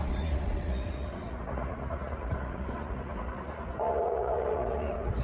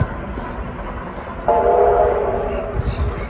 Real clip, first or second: second